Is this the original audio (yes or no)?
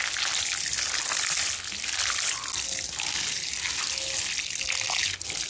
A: yes